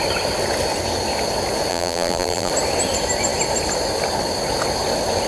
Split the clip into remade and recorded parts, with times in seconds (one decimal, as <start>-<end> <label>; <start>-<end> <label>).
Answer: 0.0-1.7 recorded; 1.7-2.5 remade; 2.5-5.3 recorded